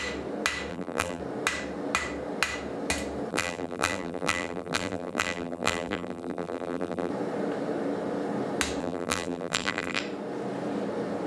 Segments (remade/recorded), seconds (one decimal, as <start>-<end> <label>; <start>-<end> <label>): 0.0-0.7 recorded; 0.7-1.2 remade; 1.2-3.3 recorded; 3.3-7.1 remade; 7.1-8.8 recorded; 8.8-10.0 remade; 10.0-11.3 recorded